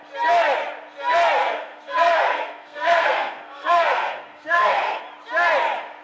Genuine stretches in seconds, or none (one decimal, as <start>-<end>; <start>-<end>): 0.0-1.4; 5.0-6.0